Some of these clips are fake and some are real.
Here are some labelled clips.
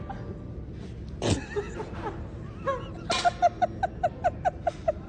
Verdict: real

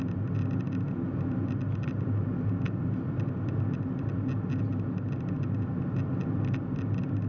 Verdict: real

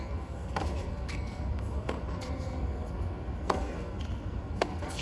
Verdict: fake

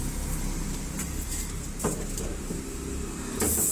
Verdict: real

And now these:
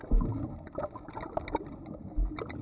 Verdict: real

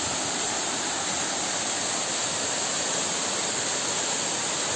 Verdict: real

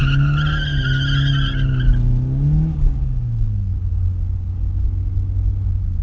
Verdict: real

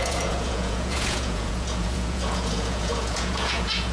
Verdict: fake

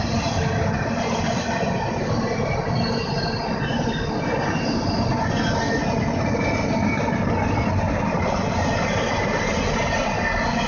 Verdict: real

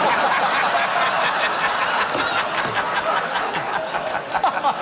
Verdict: real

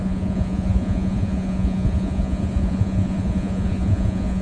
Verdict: fake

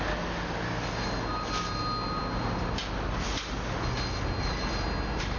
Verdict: real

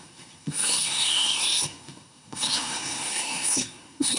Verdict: fake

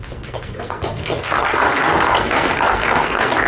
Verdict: fake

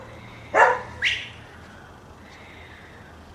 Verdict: real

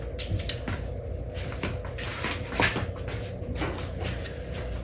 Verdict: real